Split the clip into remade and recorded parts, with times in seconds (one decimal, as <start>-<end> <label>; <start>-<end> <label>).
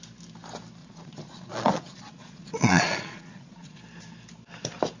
0.0-0.8 recorded; 0.8-3.8 remade; 3.8-5.0 recorded